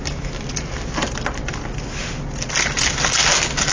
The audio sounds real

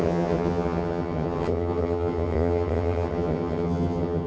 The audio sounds fake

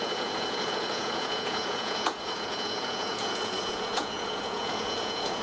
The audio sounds fake